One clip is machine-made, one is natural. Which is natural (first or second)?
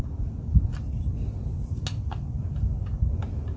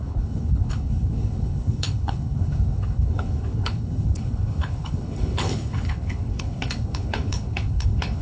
first